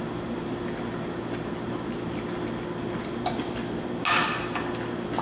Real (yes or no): yes